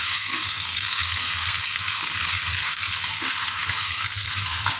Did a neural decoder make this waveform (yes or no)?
yes